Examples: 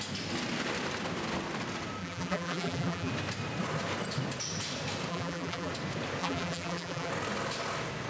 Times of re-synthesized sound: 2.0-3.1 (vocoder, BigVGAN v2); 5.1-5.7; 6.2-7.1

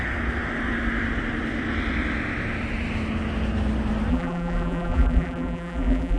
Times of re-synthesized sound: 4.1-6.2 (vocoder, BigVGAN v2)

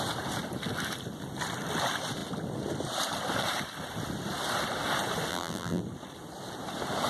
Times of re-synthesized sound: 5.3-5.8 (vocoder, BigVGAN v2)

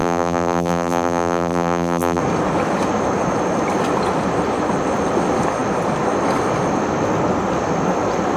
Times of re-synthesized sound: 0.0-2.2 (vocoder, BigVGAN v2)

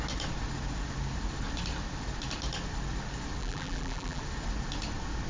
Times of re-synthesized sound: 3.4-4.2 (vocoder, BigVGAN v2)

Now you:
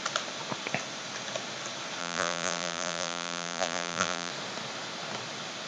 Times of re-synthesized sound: 2.0-4.3 (vocoder, BigVGAN v2)

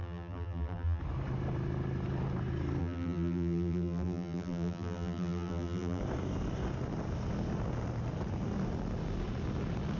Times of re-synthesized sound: 0.0-1.0 (vocoder, BigVGAN v2); 2.8-6.0